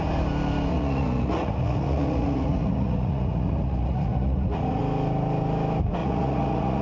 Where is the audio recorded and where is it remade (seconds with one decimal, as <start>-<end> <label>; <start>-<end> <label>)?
0.0-0.7 recorded; 0.7-4.8 remade; 4.8-6.0 recorded; 6.0-6.8 remade